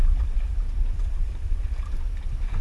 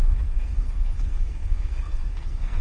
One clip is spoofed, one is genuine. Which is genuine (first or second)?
first